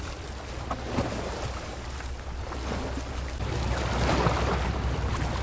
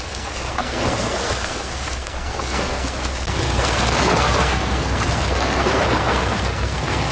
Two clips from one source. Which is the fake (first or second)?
second